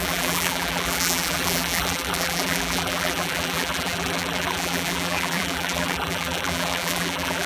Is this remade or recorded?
remade